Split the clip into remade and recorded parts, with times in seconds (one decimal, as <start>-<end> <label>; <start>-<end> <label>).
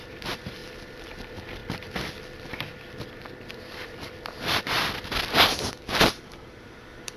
0.0-0.6 remade; 0.6-1.1 recorded; 1.1-1.6 remade; 1.6-5.9 recorded; 5.9-7.2 remade